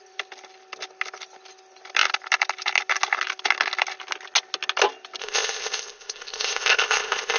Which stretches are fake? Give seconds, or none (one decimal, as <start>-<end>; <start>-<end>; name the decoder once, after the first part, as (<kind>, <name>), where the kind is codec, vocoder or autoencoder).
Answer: 5.2-7.4 (codec, ZipCodec)